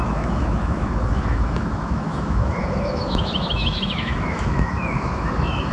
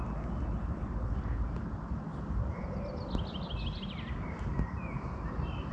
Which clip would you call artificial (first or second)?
first